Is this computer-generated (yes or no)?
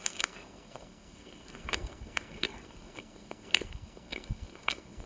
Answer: yes